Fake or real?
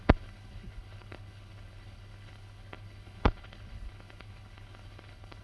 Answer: fake